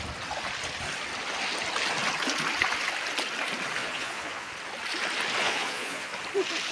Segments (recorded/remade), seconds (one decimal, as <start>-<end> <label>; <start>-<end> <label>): 0.0-3.8 recorded; 3.8-4.5 remade; 4.5-5.4 recorded; 5.4-6.1 remade; 6.1-6.7 recorded